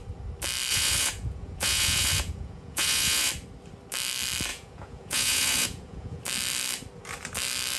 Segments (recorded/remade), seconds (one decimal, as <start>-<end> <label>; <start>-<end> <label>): 0.0-0.7 recorded; 0.7-3.3 remade; 3.3-4.5 recorded; 4.5-6.2 remade; 6.2-7.8 recorded